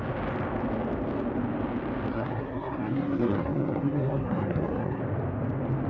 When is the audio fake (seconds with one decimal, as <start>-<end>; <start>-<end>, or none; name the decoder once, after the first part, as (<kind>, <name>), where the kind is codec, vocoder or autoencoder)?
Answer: 2.1-5.0 (codec, SNAC)